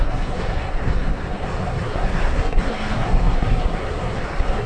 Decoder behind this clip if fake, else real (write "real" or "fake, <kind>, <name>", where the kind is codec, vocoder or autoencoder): fake, codec, SNAC